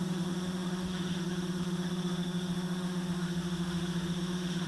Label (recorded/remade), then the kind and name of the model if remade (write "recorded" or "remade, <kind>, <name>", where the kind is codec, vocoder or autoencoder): remade, autoencoder, DAC-VAE